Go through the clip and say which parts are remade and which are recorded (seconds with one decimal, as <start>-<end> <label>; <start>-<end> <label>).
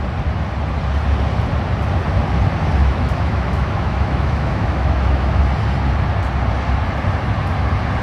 0.0-2.8 recorded; 2.8-5.4 remade; 5.4-8.0 recorded